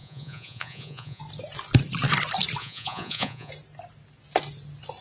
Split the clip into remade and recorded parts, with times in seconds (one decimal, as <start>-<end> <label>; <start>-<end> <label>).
0.0-1.2 remade; 1.2-2.6 recorded; 2.6-3.5 remade; 3.5-5.0 recorded